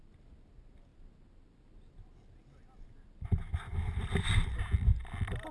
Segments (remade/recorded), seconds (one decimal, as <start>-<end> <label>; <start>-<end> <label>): 0.0-5.5 recorded